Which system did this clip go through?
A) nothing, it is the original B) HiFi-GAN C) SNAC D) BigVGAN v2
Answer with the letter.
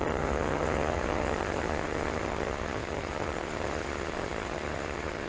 B